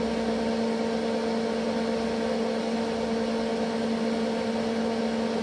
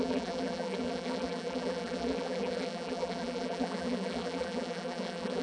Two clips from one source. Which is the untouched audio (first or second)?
first